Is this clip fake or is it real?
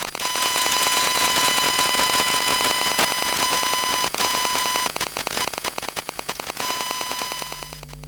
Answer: fake